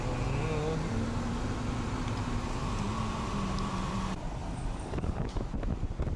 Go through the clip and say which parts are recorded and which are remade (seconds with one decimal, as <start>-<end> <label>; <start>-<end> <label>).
0.0-4.4 recorded; 4.4-5.4 remade; 5.4-6.2 recorded